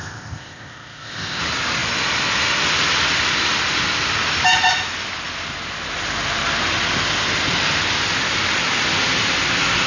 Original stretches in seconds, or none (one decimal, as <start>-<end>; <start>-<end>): 1.4-9.9